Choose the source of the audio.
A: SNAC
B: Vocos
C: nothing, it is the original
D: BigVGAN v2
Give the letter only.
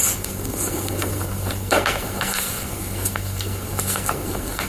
A